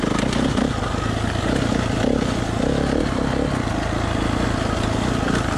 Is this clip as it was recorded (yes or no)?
yes